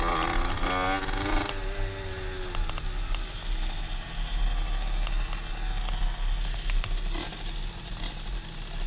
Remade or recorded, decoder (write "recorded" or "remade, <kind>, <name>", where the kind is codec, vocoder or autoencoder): recorded